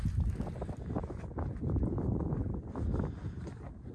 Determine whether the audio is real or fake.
real